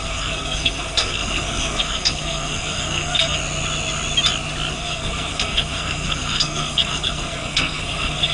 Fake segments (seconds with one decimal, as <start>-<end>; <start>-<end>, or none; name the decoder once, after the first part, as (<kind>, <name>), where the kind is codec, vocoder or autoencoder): 0.0-3.4 (codec, SNAC); 4.7-8.3